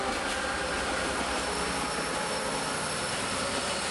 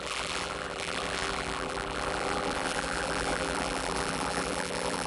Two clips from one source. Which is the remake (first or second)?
second